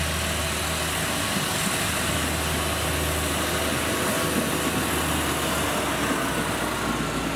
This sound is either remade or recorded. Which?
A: recorded